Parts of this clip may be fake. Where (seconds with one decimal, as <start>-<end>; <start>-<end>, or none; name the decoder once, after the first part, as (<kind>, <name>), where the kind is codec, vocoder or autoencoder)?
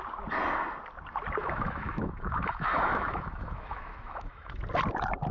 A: 1.4-4.6 (autoencoder, DAC-VAE)